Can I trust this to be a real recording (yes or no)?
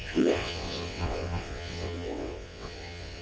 no